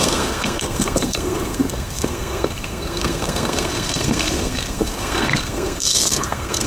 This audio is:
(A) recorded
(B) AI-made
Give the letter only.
B